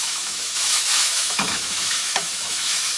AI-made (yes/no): yes